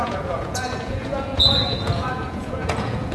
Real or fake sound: fake